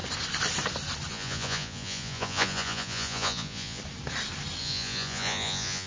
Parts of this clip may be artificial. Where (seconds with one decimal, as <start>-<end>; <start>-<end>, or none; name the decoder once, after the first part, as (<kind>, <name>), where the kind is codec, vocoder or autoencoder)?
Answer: 1.1-3.8 (vocoder, Vocos); 4.6-5.9